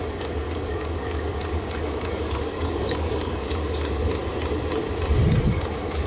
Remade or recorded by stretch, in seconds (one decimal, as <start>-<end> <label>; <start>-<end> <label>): 0.0-4.2 remade; 4.2-5.5 recorded; 5.5-6.1 remade